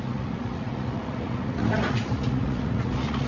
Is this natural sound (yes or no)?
no